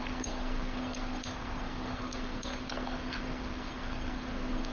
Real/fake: fake